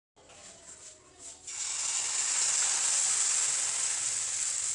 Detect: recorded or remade recorded